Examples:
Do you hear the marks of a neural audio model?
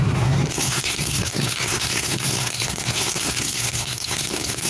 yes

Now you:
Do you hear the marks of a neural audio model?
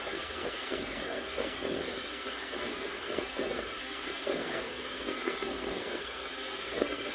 yes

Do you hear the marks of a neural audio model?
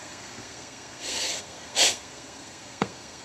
yes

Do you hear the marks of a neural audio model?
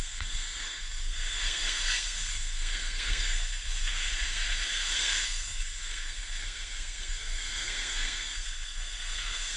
yes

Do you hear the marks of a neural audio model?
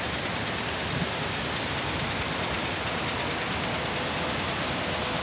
no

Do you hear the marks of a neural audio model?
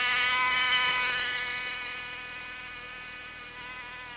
no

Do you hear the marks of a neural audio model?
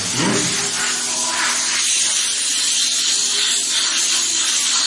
no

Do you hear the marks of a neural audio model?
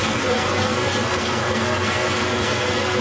yes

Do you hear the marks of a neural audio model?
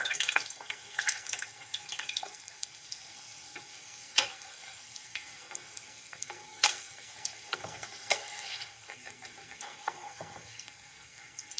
yes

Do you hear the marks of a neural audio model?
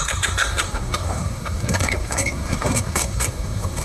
yes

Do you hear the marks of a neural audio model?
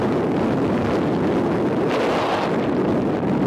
no